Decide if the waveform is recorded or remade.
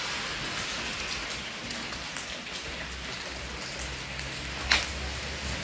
recorded